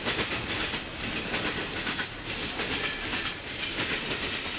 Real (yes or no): yes